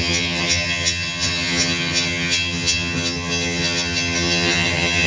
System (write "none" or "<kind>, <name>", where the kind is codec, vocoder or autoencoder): vocoder, HiFi-GAN